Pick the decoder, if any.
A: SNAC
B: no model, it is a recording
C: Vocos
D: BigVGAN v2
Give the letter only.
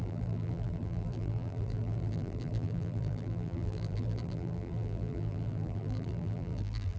D